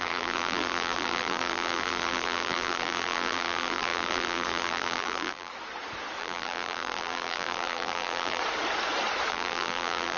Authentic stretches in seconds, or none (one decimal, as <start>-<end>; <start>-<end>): 5.5-6.2; 8.4-9.3